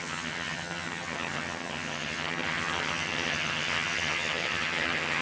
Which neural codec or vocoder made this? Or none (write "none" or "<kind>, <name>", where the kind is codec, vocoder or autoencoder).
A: vocoder, HiFi-GAN